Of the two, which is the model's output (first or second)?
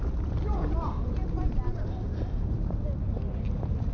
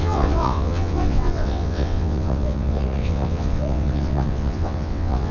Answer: second